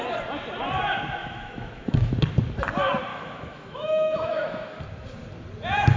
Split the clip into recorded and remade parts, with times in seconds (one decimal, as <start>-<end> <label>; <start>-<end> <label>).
0.0-1.2 recorded; 1.2-2.1 remade; 2.1-3.1 recorded; 3.1-4.8 remade; 4.8-6.0 recorded

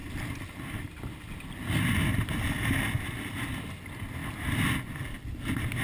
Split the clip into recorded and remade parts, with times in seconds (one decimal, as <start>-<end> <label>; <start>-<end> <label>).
0.0-5.8 recorded

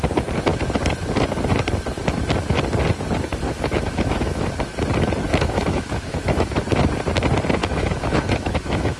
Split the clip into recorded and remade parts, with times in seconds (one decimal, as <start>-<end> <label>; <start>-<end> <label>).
0.0-3.3 recorded; 3.3-4.5 remade; 4.5-5.3 recorded; 5.3-6.6 remade; 6.6-7.6 recorded; 7.6-9.0 remade

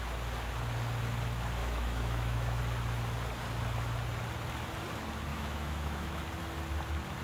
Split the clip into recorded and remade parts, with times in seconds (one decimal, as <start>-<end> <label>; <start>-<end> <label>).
0.0-1.6 recorded; 1.6-2.6 remade; 2.6-5.3 recorded; 5.3-6.2 remade; 6.2-7.2 recorded

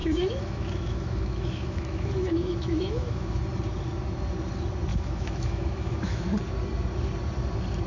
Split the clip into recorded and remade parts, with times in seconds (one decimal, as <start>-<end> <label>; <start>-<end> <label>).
0.0-3.4 remade; 3.4-4.9 recorded; 4.9-6.3 remade; 6.3-7.9 recorded